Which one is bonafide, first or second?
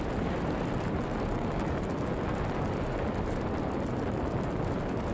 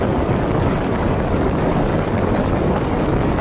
first